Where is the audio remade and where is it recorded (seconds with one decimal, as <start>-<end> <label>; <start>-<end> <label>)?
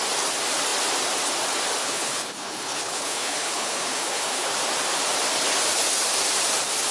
0.0-1.8 recorded; 1.8-4.5 remade; 4.5-6.9 recorded